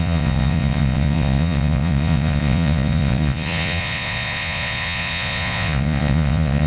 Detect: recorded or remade remade